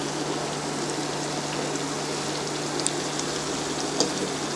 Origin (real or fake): real